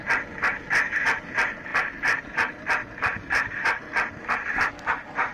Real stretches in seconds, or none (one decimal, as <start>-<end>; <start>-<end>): 0.0-1.7; 4.7-5.3